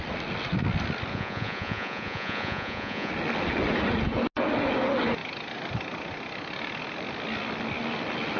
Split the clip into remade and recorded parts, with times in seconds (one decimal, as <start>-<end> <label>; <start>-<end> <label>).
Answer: 0.0-1.1 recorded; 1.1-3.1 remade; 3.1-8.4 recorded